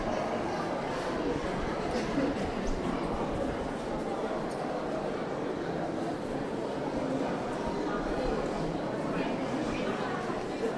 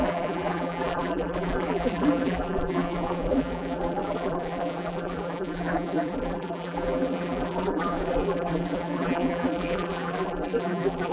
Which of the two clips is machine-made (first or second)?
second